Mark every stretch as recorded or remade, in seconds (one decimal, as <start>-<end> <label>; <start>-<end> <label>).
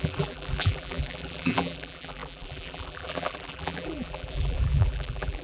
0.0-5.4 remade